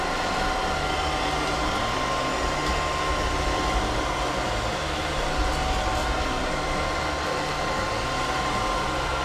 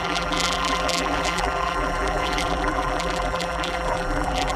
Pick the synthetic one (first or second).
second